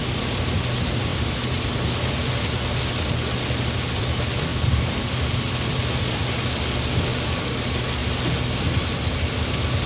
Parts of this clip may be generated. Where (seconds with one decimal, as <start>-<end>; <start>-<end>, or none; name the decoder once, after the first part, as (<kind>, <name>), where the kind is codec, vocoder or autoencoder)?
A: 1.1-2.3 (vocoder, BigVGAN v2); 4.5-5.5